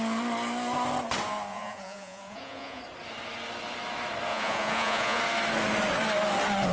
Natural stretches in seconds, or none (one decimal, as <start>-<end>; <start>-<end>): 0.0-1.5; 2.8-4.3; 5.2-6.7